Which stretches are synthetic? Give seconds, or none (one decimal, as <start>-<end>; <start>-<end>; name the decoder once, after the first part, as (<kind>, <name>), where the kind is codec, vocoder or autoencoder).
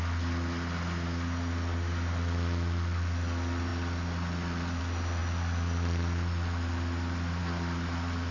none